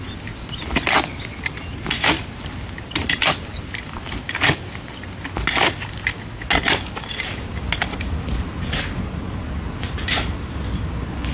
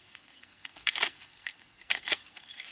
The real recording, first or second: first